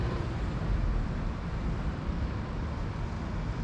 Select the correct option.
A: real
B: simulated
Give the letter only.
B